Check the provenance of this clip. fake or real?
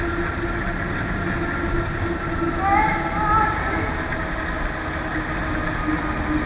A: real